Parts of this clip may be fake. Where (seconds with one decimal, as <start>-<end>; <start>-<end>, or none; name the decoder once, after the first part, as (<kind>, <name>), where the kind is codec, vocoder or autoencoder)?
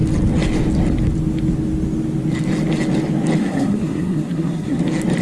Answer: 3.4-4.8 (codec, SNAC)